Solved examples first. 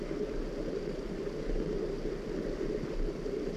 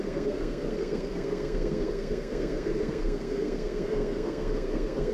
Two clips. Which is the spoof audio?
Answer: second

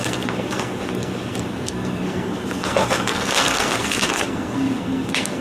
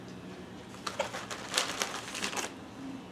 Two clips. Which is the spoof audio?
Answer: first